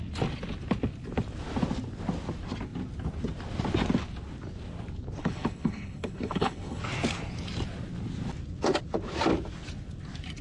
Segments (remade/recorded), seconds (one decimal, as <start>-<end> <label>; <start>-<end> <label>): 0.0-5.2 recorded; 5.2-6.8 remade; 6.8-10.4 recorded